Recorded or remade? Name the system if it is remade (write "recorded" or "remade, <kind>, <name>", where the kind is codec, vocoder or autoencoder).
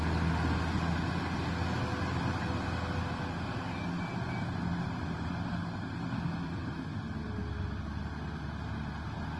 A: recorded